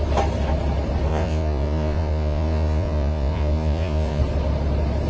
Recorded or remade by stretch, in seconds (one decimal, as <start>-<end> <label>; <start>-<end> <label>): 0.0-1.1 recorded; 1.1-4.2 remade; 4.2-5.1 recorded